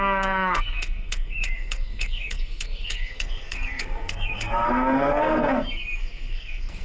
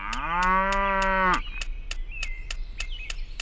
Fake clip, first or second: first